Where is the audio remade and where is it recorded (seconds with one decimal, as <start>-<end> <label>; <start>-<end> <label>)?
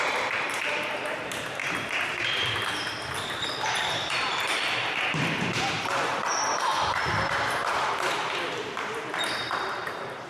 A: 0.0-1.6 remade; 1.6-3.6 recorded; 3.6-10.3 remade